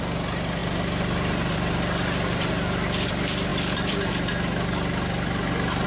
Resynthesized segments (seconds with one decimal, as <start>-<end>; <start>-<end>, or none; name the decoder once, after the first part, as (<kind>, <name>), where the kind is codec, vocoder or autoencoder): 0.6-3.1 (vocoder, BigVGAN v2); 3.5-4.1